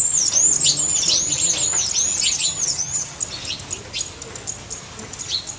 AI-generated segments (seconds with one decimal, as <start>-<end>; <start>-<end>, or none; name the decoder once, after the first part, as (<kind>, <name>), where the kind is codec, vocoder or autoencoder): 2.3-3.2 (vocoder, HiFi-GAN)